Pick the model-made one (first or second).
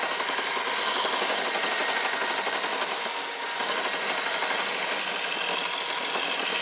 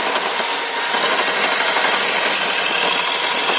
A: second